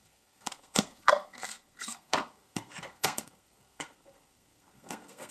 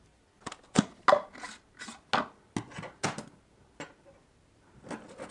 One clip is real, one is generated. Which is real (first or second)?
second